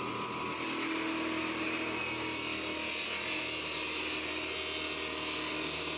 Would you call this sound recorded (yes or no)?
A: yes